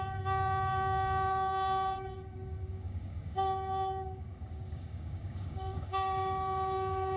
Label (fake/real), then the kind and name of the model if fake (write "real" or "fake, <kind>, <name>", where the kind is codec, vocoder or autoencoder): fake, codec, DAC